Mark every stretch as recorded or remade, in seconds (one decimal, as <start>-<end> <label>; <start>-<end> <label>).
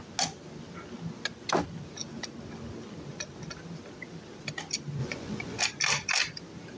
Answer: 0.0-5.0 recorded; 5.0-5.6 remade; 5.6-6.8 recorded